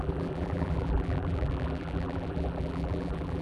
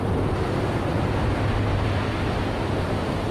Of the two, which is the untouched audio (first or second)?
second